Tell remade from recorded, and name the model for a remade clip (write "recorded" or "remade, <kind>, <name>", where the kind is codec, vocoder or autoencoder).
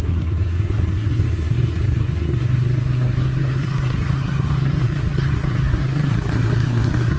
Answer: remade, codec, SNAC